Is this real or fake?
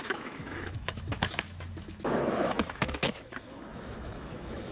fake